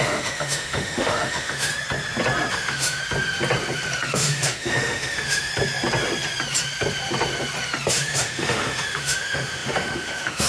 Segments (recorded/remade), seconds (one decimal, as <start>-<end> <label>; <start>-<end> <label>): 0.0-1.7 remade; 1.7-2.5 recorded; 2.5-3.0 remade; 3.0-4.1 recorded; 4.1-5.5 remade; 5.5-7.9 recorded; 7.9-10.5 remade